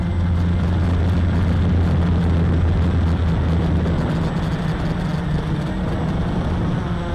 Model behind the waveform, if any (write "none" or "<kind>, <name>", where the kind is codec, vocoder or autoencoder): none